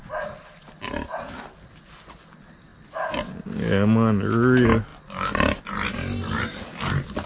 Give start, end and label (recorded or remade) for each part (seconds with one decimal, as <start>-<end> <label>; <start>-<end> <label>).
0.0-7.3 recorded